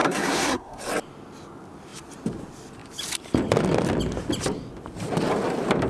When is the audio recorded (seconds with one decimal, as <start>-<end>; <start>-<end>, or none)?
0.8-5.9